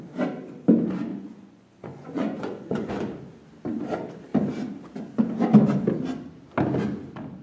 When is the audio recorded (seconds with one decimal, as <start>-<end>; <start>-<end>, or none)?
0.0-1.1; 2.9-7.4